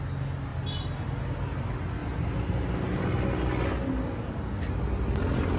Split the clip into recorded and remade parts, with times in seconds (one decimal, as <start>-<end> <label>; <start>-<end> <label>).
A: 0.0-5.6 recorded

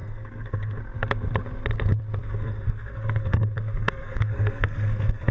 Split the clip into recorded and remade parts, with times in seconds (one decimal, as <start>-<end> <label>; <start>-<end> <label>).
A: 0.0-0.8 remade; 0.8-2.2 recorded; 2.2-5.3 remade

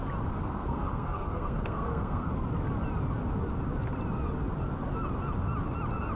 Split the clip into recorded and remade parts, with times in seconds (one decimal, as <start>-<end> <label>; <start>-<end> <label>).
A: 0.0-0.4 recorded; 0.4-2.3 remade; 2.3-6.2 recorded

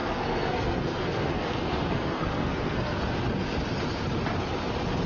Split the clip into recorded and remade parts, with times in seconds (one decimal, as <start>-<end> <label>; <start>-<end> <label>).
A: 0.0-3.0 remade; 3.0-5.1 recorded

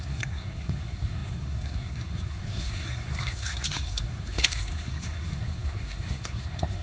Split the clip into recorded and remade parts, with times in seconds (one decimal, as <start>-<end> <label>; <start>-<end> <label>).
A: 0.0-6.8 remade

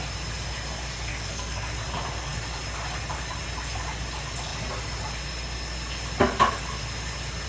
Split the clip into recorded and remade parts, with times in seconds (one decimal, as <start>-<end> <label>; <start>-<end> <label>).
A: 0.0-1.1 recorded; 1.1-1.7 remade; 1.7-7.5 recorded